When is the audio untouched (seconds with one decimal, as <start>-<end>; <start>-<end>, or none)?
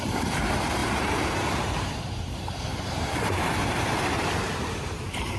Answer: none